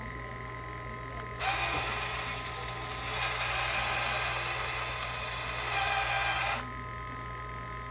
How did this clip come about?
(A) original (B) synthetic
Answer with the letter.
A